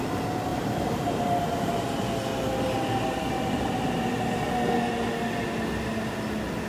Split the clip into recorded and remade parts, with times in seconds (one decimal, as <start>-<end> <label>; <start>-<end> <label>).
0.0-0.5 recorded; 0.5-1.4 remade; 1.4-6.7 recorded